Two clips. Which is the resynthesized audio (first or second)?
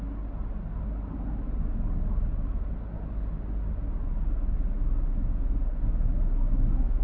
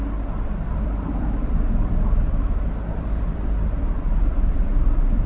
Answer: second